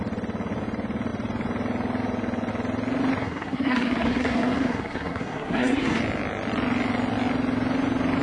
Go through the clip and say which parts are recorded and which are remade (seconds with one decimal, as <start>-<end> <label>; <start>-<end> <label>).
0.0-3.2 recorded; 3.2-6.0 remade; 6.0-8.2 recorded

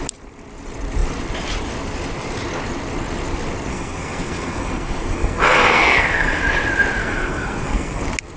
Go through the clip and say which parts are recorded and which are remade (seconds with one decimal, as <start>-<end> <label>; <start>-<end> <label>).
0.0-3.7 recorded; 3.7-6.4 remade; 6.4-7.0 recorded; 7.0-8.0 remade; 8.0-8.4 recorded

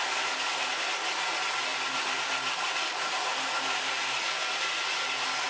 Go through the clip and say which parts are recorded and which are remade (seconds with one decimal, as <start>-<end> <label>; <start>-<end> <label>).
0.0-5.5 recorded